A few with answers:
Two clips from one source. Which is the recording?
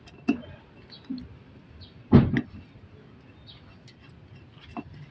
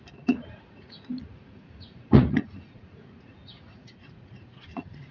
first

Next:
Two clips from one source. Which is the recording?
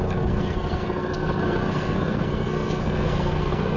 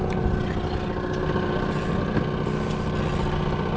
second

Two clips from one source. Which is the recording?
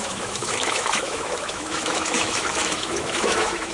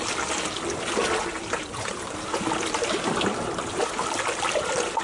second